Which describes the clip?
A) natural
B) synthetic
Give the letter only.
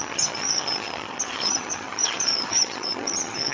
B